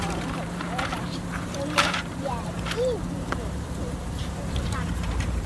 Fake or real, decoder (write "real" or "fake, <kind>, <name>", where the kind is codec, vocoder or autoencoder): fake, vocoder, BigVGAN v2